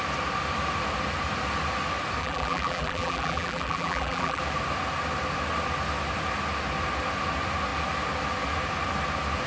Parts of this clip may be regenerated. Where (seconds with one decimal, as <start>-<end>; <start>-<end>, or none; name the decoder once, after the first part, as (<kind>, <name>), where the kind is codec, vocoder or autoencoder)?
2.2-4.4 (vocoder, BigVGAN v2)